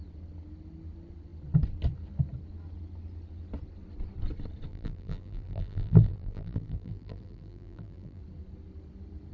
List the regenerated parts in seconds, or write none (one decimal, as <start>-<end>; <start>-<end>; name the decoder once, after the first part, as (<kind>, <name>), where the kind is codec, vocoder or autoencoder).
4.7-8.2 (vocoder, BigVGAN v2)